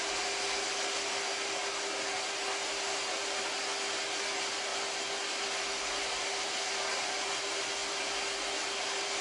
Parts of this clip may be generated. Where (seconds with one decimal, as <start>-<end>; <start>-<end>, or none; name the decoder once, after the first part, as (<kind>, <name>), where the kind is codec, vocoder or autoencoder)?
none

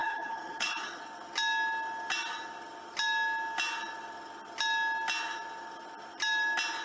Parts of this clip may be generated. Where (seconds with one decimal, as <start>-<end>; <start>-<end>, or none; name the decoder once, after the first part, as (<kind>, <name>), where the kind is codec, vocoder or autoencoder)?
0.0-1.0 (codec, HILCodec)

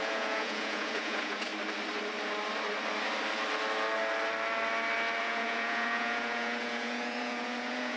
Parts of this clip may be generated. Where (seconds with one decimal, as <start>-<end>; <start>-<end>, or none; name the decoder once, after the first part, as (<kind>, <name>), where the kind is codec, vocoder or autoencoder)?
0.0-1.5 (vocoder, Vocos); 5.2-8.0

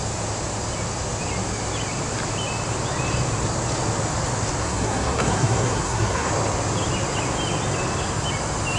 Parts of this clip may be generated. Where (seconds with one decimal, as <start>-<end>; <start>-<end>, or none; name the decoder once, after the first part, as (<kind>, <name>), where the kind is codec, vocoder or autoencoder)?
4.6-6.3 (codec, SNAC)

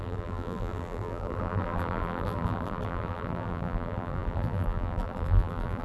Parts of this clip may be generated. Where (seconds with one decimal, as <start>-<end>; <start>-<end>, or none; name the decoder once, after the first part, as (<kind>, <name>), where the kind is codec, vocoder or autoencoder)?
0.0-5.8 (vocoder, BigVGAN v2)